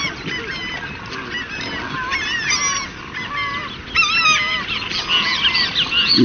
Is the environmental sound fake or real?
real